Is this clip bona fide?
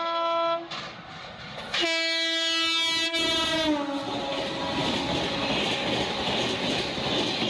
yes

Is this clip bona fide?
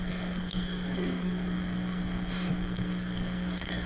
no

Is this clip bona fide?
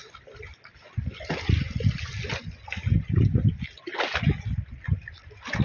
yes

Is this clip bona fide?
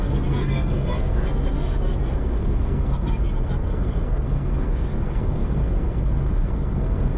no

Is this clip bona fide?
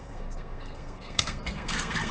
no